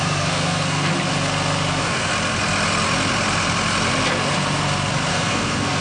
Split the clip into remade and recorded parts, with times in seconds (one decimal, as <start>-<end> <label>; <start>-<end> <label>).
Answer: 0.0-0.9 remade; 0.9-1.7 recorded; 1.7-2.1 remade; 2.1-5.1 recorded; 5.1-5.8 remade